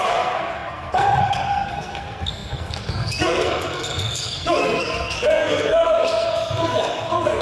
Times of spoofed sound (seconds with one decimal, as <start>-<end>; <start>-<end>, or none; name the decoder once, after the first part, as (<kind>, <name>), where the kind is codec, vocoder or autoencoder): 0.0-7.4 (codec, SNAC)